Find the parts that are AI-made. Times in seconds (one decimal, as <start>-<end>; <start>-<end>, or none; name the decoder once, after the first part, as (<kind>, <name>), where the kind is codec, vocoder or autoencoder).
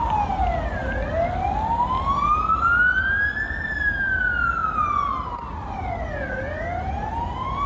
none